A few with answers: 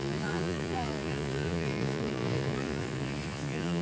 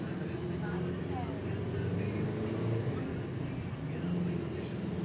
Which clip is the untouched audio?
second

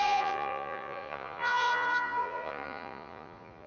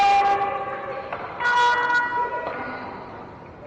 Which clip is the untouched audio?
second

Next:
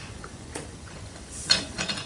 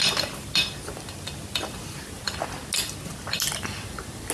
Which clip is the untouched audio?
second